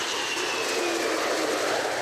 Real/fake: real